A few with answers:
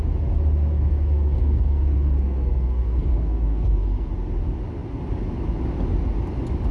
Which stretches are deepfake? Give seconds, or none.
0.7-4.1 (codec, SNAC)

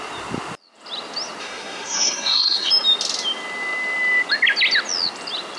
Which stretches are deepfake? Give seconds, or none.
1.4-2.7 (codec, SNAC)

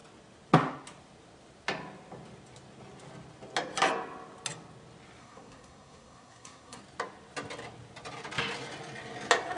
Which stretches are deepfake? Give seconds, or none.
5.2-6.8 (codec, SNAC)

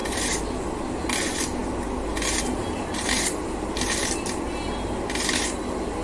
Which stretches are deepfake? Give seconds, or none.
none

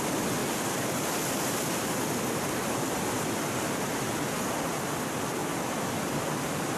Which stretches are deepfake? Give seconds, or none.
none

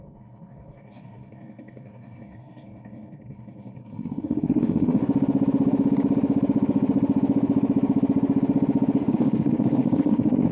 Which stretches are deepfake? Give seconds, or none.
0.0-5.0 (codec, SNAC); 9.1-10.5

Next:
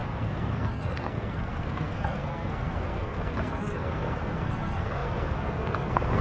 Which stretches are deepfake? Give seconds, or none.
0.0-6.2 (codec, SNAC)